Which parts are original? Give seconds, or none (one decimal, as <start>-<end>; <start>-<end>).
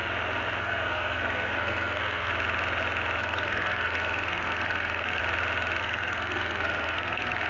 0.0-0.6; 2.3-3.2; 5.2-5.8